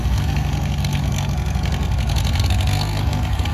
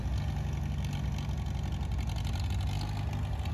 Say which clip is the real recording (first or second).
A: second